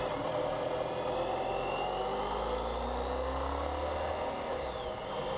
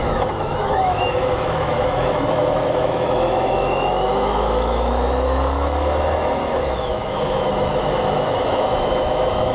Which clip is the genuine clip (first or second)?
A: first